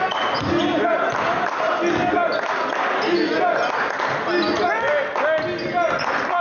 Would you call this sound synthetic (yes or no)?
no